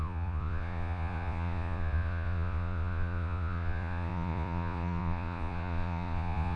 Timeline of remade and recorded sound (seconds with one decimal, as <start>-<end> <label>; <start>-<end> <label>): 0.0-6.6 remade